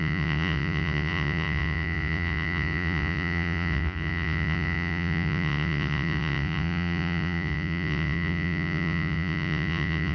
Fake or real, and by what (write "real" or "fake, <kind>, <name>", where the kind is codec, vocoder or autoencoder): fake, vocoder, Vocos